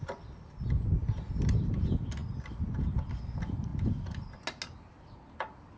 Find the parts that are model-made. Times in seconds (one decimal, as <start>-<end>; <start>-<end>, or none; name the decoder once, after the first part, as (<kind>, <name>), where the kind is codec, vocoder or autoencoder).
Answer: none